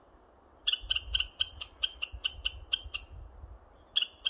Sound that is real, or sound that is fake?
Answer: real